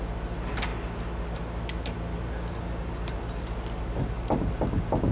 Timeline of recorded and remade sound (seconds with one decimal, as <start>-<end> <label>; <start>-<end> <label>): 0.0-5.1 recorded